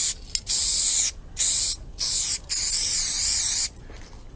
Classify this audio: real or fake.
real